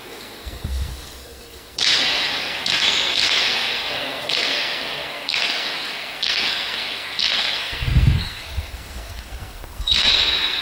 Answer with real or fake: fake